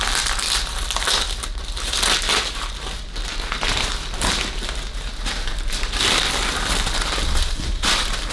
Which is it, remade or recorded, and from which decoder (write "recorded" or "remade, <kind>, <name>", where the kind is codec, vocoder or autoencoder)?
recorded